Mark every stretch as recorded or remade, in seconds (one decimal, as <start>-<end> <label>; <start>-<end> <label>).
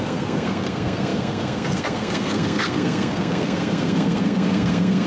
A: 0.0-5.1 remade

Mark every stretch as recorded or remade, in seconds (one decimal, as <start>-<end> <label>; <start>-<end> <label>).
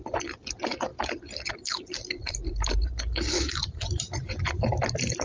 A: 0.0-2.4 recorded; 2.4-4.3 remade; 4.3-5.2 recorded